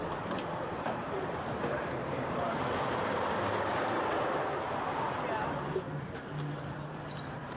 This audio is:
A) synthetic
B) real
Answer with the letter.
A